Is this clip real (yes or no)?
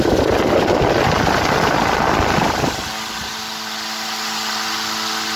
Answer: yes